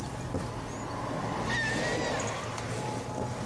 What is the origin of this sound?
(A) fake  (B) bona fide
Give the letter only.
B